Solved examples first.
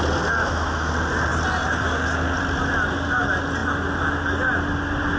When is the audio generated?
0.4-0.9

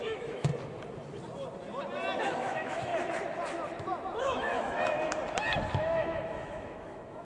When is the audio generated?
0.0-0.5; 2.2-2.9; 4.2-5.2; 5.8-7.2